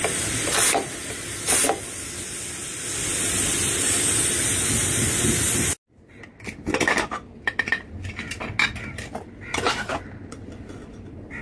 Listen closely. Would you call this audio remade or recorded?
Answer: recorded